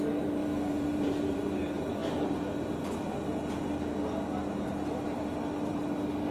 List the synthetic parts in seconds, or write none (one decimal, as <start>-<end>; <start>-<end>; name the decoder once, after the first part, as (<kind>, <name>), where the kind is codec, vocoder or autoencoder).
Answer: 0.4-1.4 (vocoder, BigVGAN v2)